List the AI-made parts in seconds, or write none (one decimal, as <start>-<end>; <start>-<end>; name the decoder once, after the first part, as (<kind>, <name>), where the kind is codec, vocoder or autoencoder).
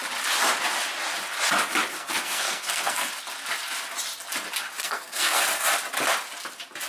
1.9-3.1 (codec, SNAC); 4.8-5.4